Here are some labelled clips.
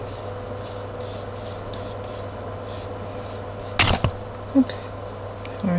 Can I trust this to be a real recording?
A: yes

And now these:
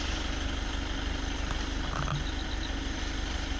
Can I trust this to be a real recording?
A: yes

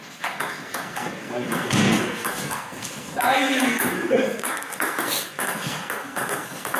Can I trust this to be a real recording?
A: no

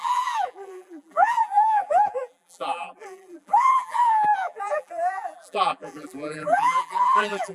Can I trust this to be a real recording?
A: no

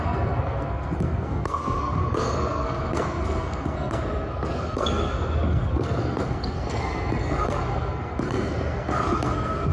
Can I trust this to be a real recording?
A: no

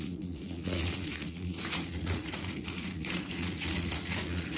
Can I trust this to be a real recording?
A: no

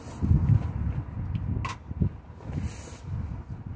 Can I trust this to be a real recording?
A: yes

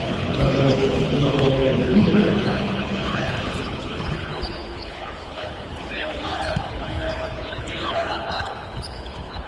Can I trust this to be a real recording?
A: no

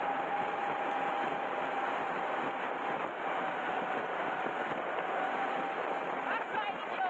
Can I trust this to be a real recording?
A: yes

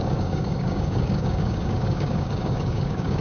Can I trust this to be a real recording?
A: no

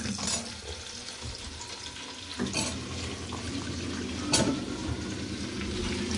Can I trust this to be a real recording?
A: yes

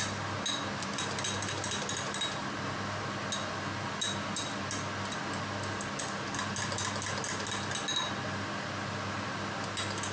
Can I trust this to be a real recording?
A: yes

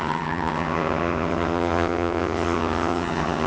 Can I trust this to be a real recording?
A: no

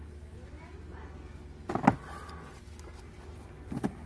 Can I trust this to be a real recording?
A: yes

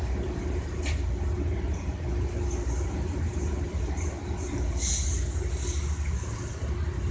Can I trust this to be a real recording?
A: yes